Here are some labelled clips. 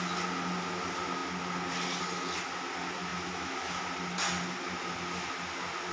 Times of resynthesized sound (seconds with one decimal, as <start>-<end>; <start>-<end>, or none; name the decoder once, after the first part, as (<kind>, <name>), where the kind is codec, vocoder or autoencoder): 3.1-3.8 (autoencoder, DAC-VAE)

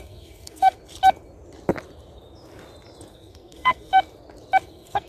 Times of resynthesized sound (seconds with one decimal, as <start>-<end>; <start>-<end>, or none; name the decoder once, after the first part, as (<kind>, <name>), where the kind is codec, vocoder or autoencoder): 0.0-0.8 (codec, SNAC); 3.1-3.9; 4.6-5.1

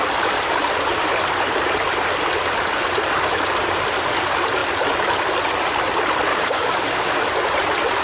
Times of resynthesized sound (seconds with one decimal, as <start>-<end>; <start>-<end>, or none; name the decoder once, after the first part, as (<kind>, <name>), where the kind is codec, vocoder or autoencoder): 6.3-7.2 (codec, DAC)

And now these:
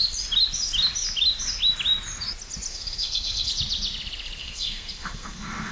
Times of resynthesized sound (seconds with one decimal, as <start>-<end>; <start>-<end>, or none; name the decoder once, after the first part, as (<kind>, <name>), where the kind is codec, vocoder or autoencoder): 2.7-3.5 (codec, SNAC); 4.4-5.7

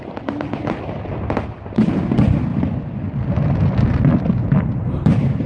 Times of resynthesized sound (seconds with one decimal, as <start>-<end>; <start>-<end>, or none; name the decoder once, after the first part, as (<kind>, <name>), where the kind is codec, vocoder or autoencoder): none